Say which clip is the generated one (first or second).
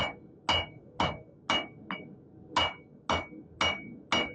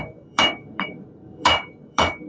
second